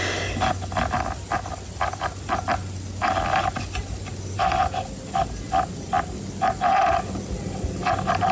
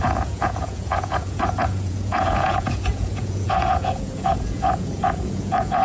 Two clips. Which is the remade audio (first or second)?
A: second